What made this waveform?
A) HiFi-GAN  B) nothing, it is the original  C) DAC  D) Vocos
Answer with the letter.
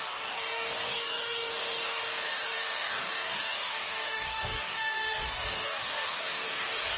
C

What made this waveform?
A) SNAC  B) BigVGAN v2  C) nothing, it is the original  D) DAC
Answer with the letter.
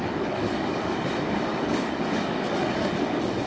D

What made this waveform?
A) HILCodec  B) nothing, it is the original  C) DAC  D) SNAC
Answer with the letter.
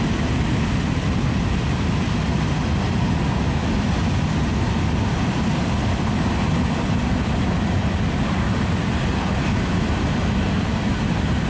B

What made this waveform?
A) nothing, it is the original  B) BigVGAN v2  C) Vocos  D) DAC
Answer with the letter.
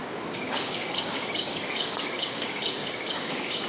D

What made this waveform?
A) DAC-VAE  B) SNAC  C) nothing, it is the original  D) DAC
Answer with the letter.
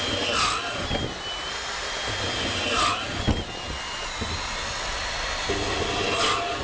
C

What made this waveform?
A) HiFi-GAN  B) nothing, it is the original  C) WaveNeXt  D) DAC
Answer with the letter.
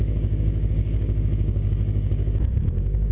D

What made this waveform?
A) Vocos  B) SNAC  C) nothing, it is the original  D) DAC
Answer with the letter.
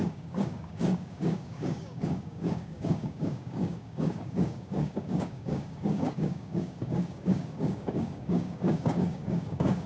D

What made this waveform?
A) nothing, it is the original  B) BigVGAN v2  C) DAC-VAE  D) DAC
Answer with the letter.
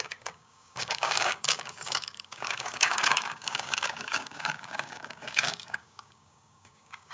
D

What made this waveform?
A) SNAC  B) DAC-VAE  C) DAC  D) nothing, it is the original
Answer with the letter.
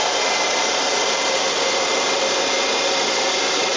D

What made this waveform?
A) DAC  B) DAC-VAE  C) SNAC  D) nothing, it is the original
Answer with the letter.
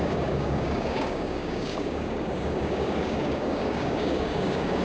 A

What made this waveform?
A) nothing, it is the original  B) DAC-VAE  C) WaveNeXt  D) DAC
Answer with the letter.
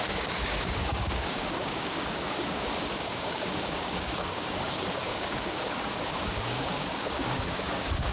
D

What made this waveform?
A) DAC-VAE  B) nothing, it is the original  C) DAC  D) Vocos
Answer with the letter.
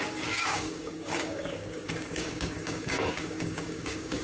C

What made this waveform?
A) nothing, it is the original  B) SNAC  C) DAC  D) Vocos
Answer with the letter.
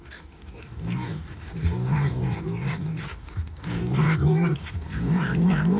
C